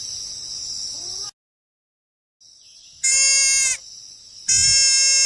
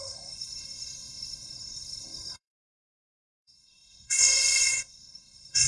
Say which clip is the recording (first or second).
first